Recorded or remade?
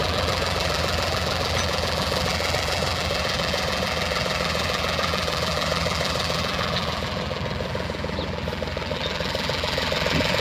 remade